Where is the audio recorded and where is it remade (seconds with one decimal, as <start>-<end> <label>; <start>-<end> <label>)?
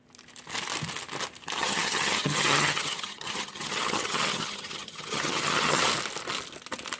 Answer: 0.0-1.6 recorded; 1.6-5.8 remade; 5.8-7.0 recorded